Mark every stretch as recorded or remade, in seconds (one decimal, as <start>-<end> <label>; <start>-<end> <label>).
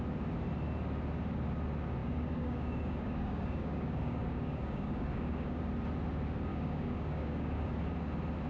0.0-2.0 recorded; 2.0-5.6 remade; 5.6-6.5 recorded; 6.5-7.7 remade; 7.7-8.5 recorded